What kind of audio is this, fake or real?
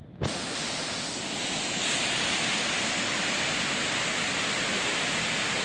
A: real